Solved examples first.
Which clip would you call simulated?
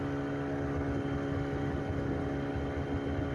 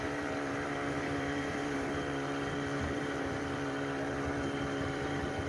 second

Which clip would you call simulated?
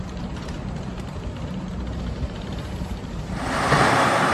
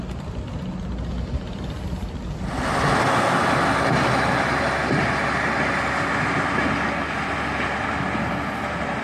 first